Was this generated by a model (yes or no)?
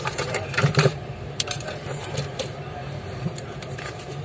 yes